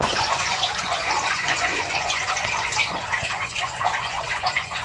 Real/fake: fake